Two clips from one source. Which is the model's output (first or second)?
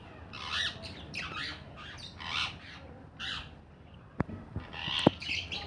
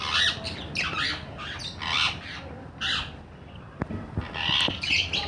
first